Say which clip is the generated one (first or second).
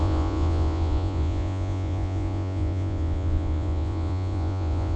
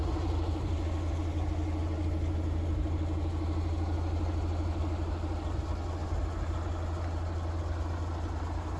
first